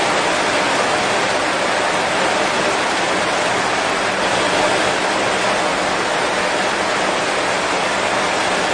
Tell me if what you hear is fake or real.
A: real